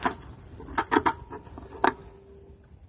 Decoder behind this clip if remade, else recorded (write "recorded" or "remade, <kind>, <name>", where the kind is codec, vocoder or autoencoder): recorded